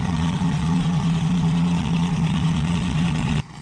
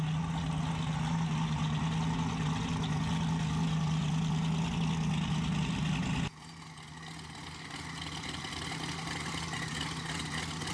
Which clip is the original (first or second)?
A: second